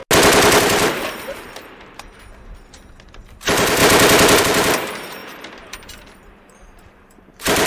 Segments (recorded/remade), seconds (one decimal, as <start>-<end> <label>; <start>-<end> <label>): 0.0-0.6 recorded; 0.6-3.8 remade; 3.8-4.4 recorded; 4.4-7.7 remade